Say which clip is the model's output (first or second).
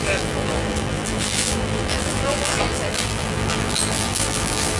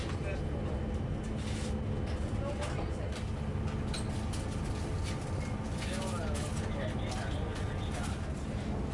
first